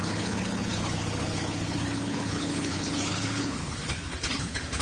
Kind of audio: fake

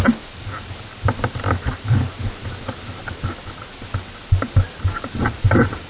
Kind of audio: real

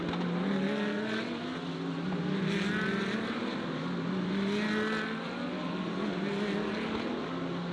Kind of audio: real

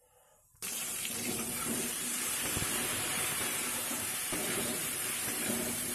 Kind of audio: fake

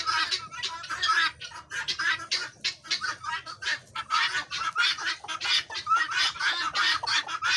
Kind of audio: real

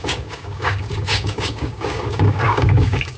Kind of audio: fake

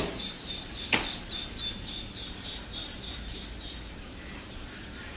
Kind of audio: real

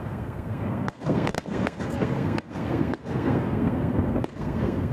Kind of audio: fake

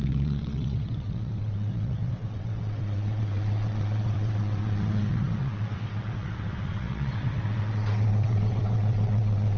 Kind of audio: fake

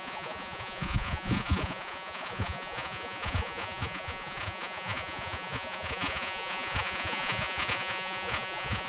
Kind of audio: fake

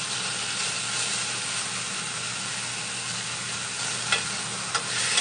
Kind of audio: real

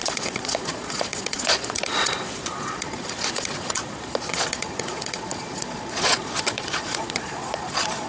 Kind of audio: fake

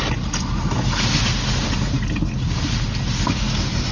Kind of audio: real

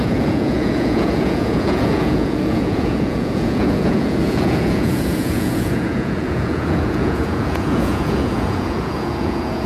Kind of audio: fake